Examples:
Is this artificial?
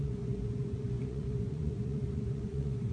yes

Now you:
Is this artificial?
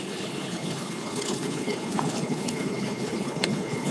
yes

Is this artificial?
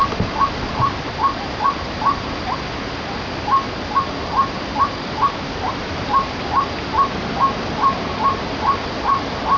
no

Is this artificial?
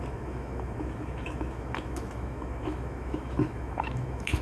yes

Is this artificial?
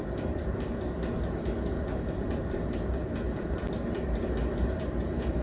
no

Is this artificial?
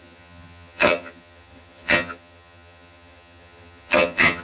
yes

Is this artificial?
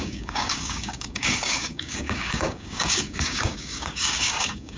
yes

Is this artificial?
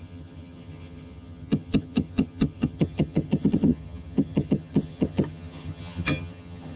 yes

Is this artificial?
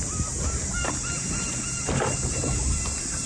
no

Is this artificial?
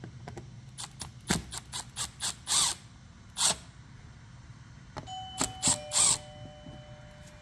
no